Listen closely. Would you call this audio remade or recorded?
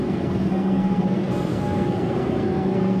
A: remade